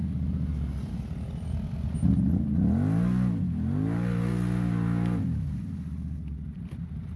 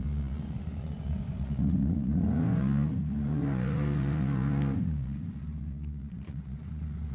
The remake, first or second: second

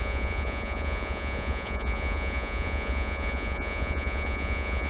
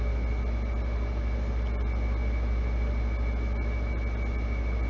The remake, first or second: first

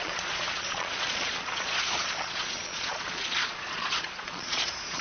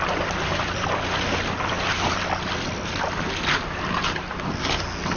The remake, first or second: first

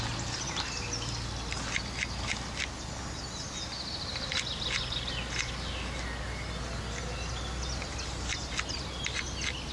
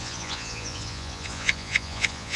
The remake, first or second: second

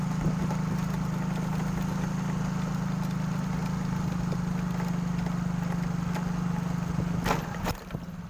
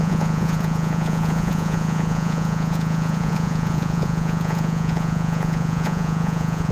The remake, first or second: second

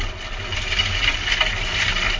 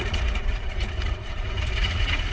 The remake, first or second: second